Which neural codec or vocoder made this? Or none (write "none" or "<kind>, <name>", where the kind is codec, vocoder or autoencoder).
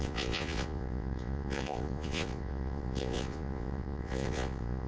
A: vocoder, Vocos